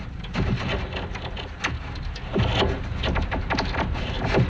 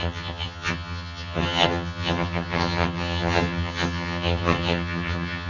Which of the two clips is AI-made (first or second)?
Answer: second